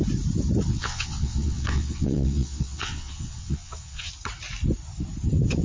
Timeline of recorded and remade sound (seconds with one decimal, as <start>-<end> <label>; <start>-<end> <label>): 0.0-0.7 recorded; 0.7-4.1 remade; 4.1-5.6 recorded